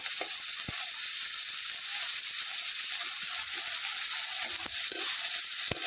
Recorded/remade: recorded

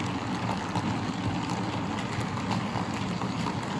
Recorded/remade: recorded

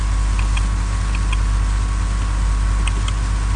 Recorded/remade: recorded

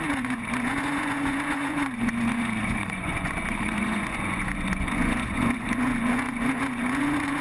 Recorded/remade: remade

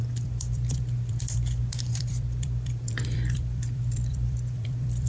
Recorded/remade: remade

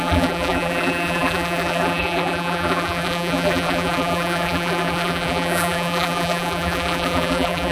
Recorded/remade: remade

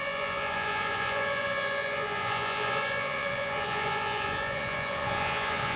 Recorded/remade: remade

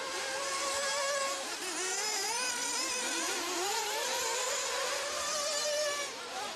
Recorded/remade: remade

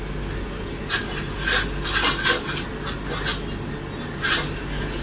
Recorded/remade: recorded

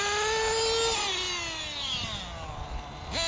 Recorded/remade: recorded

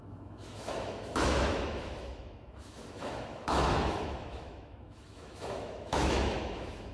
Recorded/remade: remade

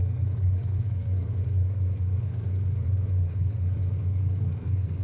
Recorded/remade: remade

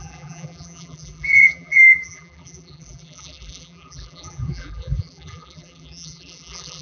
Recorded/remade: remade